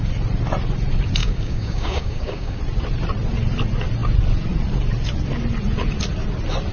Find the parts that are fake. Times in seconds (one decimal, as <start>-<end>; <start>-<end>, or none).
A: 1.2-2.6